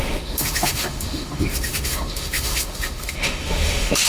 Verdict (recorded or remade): remade